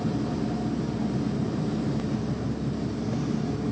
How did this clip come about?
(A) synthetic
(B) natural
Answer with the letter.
B